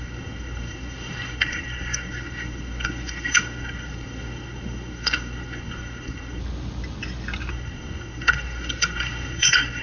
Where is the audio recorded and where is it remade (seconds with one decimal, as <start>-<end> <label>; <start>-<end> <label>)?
0.0-6.4 remade; 6.4-7.5 recorded; 7.5-9.8 remade